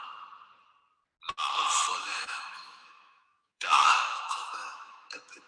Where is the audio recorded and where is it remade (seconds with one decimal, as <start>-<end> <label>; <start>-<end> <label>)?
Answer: 0.0-2.0 recorded; 2.0-5.5 remade